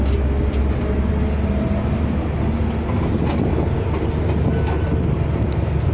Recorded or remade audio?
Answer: recorded